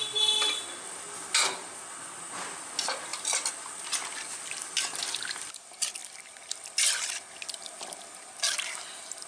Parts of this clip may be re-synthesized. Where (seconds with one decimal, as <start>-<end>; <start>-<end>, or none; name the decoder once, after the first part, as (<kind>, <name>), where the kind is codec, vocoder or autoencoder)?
6.0-8.3 (vocoder, BigVGAN v2)